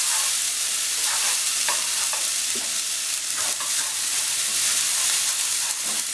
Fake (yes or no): yes